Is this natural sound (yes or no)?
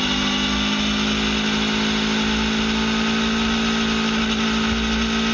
yes